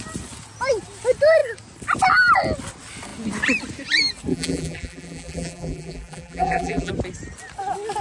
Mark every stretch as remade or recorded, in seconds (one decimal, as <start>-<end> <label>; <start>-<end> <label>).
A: 0.0-4.3 recorded; 4.3-6.9 remade; 6.9-8.0 recorded